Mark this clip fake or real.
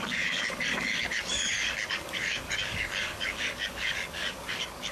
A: fake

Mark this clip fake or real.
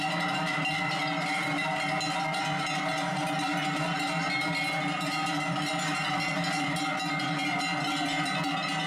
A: real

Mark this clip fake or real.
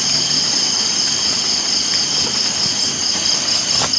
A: real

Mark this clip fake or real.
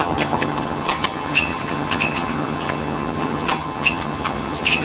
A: fake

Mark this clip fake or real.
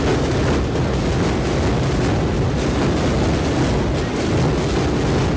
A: real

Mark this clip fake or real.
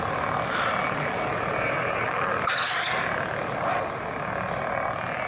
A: real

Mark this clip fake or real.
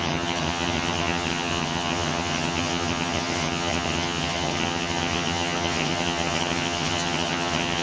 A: fake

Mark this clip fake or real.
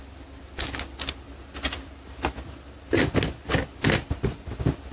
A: real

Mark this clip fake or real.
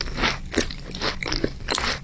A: real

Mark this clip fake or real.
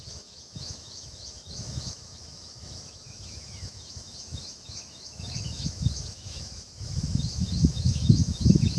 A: fake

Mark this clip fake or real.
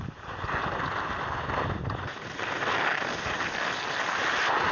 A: real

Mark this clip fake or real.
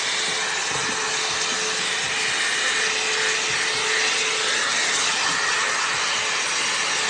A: real